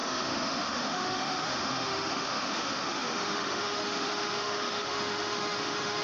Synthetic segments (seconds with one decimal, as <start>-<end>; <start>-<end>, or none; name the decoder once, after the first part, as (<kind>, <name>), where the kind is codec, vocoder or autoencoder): 0.0-6.0 (autoencoder, DAC-VAE)